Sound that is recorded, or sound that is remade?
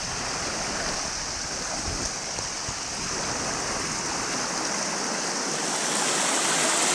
recorded